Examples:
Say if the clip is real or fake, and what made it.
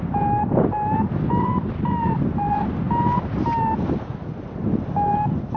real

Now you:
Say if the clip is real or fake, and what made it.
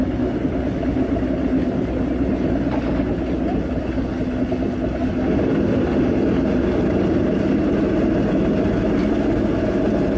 real